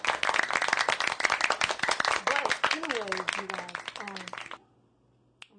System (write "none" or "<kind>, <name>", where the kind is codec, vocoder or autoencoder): none